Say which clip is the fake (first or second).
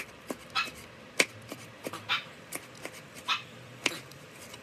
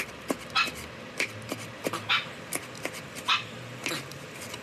first